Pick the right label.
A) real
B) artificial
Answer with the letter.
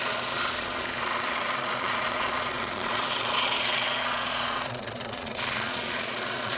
B